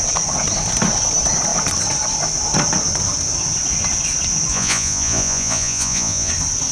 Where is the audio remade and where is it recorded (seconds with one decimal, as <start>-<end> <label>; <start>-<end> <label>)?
0.0-4.5 recorded; 4.5-6.3 remade; 6.3-6.7 recorded